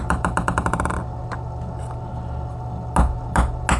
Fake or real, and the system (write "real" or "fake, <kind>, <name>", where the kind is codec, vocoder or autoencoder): real